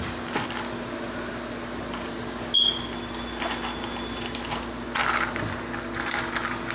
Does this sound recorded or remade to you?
recorded